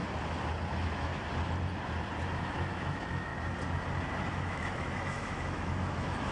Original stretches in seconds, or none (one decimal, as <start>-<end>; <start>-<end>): 0.0-0.7; 1.1-2.3; 3.3-4.3